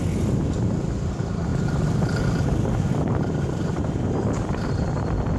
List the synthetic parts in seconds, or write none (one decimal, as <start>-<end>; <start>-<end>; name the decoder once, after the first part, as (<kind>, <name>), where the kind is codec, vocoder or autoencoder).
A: 1.5-4.7 (vocoder, BigVGAN v2)